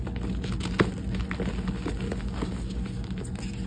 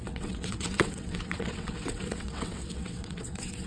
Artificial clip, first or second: second